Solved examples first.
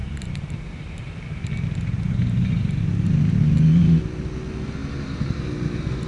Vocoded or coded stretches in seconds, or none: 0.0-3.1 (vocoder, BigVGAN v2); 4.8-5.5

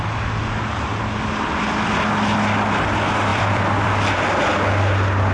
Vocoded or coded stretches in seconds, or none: 3.3-4.4 (vocoder, BigVGAN v2)

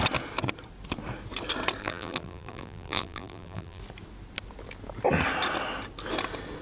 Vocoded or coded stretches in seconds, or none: 1.8-3.8 (vocoder, BigVGAN v2)

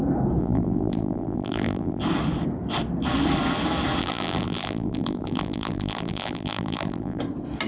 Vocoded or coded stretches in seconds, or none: 0.4-2.0 (vocoder, BigVGAN v2); 4.0-7.2

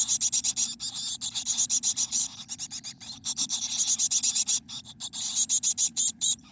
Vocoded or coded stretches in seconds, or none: 5.9-6.5 (vocoder, BigVGAN v2)

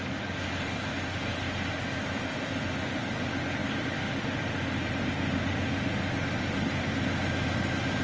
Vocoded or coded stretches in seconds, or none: none

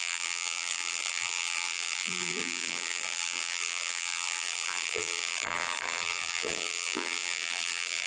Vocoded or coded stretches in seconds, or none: 0.0-8.1 (vocoder, BigVGAN v2)

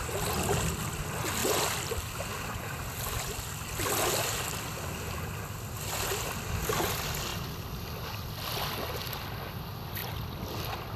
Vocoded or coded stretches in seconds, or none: none